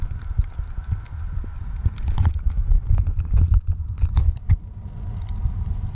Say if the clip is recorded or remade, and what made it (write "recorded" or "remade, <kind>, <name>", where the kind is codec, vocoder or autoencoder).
recorded